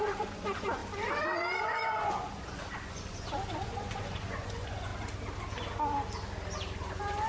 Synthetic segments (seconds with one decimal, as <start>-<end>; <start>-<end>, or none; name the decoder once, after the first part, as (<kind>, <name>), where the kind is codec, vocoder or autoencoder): 0.0-0.8 (vocoder, Vocos); 1.6-4.9; 6.8-7.3